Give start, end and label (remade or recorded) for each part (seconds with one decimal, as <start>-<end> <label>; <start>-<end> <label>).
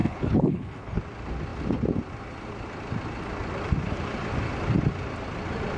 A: 0.0-1.0 remade; 1.0-5.8 recorded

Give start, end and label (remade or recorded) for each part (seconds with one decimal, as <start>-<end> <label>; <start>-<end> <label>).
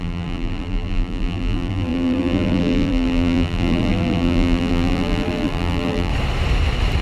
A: 0.0-6.1 remade; 6.1-7.0 recorded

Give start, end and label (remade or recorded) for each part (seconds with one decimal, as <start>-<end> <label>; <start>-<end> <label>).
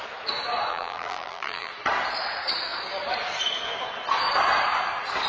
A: 0.0-0.7 recorded; 0.7-1.7 remade; 1.7-5.3 recorded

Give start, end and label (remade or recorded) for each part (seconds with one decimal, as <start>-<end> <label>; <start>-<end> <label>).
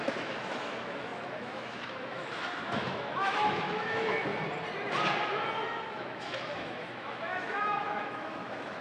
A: 0.0-4.3 remade; 4.3-5.9 recorded; 5.9-8.8 remade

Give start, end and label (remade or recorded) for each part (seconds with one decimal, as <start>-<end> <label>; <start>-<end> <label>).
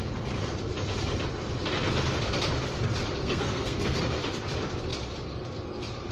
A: 0.0-3.2 recorded; 3.2-4.0 remade; 4.0-6.1 recorded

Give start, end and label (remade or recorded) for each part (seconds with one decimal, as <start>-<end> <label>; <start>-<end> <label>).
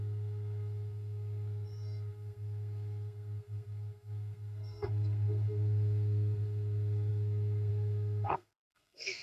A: 0.0-9.2 remade